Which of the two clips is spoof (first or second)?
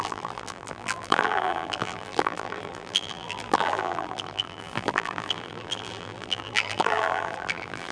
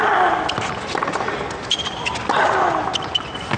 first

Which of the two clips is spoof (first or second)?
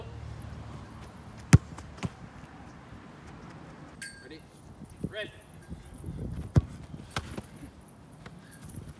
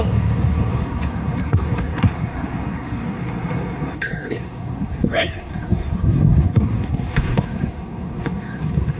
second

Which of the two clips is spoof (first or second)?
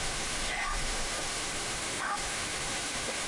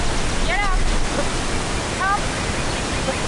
first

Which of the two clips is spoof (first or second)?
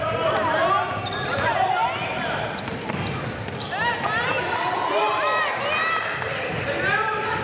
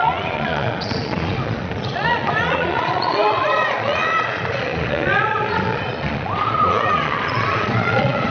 second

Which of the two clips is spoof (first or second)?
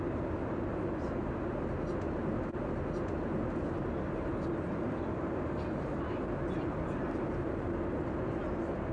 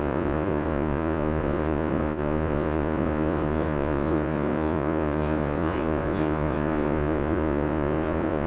second